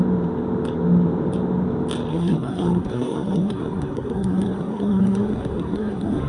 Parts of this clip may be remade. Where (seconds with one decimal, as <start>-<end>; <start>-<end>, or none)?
2.1-6.3